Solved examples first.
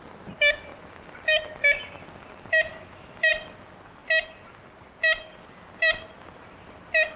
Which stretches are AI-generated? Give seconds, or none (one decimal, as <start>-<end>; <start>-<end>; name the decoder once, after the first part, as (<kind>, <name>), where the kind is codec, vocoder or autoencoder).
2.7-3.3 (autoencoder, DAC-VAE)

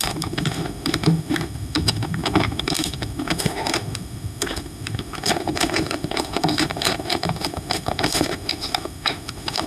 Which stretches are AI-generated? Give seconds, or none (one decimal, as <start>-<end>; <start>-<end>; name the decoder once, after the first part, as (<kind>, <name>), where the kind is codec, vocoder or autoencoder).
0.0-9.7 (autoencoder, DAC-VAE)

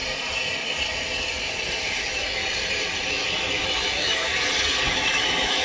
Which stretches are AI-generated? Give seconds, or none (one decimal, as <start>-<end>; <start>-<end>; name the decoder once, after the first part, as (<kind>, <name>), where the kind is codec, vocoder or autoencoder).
2.0-2.4 (autoencoder, DAC-VAE); 3.1-4.3; 4.9-5.6